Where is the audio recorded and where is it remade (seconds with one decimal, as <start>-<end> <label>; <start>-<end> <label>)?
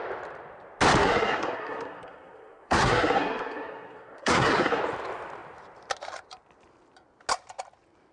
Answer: 0.0-1.0 recorded; 1.0-4.8 remade; 4.8-8.1 recorded